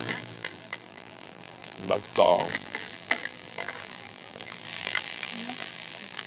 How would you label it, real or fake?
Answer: fake